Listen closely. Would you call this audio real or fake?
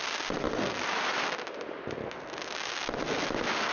real